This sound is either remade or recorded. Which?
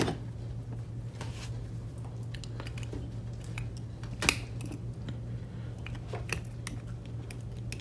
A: recorded